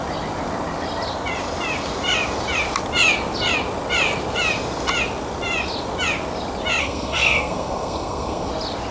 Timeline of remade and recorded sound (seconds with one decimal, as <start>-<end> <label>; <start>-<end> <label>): 0.0-6.8 recorded; 6.8-8.5 remade; 8.5-8.9 recorded